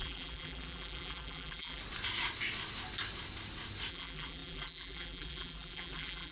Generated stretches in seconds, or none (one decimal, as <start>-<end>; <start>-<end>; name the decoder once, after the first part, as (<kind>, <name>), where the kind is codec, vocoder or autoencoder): 0.0-1.8 (vocoder, BigVGAN v2); 3.9-6.3